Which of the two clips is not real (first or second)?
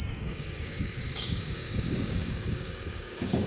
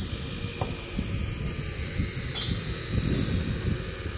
first